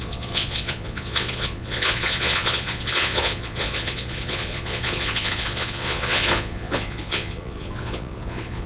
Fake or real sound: fake